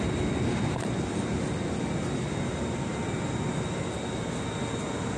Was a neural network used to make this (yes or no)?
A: no